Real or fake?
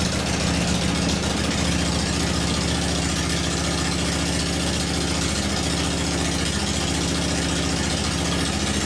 real